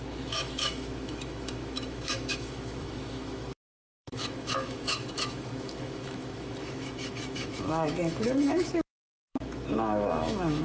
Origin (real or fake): fake